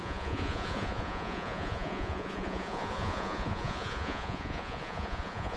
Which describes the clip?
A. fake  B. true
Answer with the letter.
A